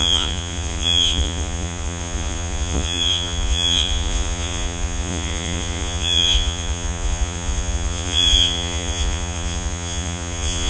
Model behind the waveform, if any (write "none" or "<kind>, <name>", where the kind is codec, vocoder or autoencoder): vocoder, Vocos